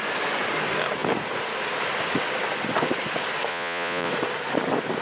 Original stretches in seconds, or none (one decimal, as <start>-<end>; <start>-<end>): 0.0-3.5; 4.1-5.0